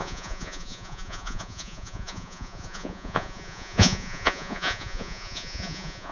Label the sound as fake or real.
fake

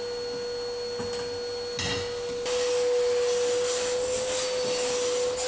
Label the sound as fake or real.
real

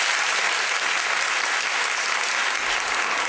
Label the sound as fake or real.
real